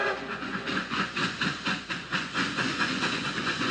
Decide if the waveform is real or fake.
fake